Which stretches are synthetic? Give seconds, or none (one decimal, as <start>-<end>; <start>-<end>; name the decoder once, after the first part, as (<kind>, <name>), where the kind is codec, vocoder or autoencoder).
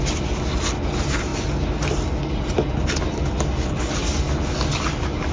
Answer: none